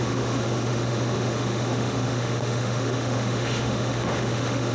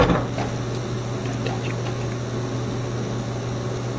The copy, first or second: first